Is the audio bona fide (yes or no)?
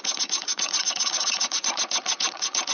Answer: no